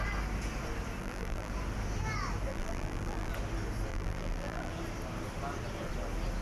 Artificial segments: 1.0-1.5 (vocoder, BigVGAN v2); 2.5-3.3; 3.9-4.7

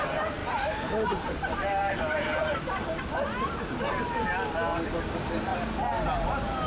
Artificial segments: 0.4-1.9 (vocoder, BigVGAN v2)